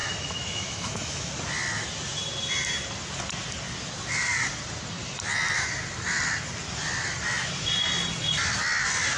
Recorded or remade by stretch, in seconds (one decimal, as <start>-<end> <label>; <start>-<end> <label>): 0.0-1.3 remade; 1.3-9.2 recorded